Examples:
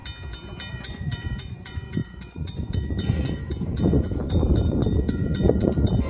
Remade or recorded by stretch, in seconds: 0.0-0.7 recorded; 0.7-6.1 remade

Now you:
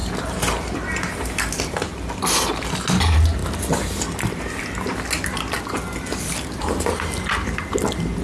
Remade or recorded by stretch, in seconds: 0.0-8.2 recorded

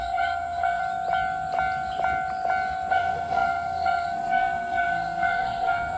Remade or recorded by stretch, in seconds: 0.0-0.8 remade; 0.8-2.9 recorded; 2.9-6.0 remade

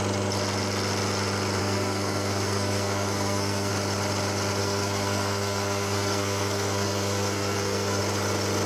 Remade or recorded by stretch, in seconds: 0.0-1.6 recorded; 1.6-3.7 remade; 3.7-4.6 recorded; 4.6-8.0 remade; 8.0-8.7 recorded

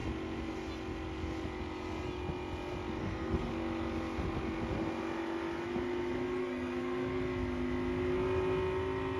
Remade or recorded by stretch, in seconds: 0.0-3.0 recorded; 3.0-3.5 remade; 3.5-6.4 recorded; 6.4-7.2 remade; 7.2-9.2 recorded

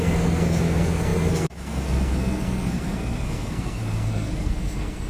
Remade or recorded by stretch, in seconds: 0.0-5.1 remade